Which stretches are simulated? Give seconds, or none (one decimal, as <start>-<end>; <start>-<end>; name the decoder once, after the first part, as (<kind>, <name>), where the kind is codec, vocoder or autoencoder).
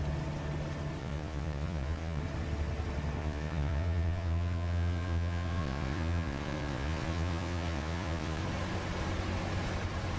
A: 1.0-2.2 (vocoder, Vocos); 3.2-8.4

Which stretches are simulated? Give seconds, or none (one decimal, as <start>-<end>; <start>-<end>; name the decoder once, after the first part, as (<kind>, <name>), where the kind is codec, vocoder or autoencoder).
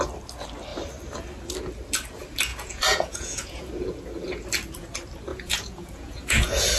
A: 2.5-3.7 (vocoder, Vocos); 5.3-6.8